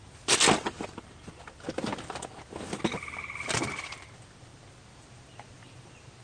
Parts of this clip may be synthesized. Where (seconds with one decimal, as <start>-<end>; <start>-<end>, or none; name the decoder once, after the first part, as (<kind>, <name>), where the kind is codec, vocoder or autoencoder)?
none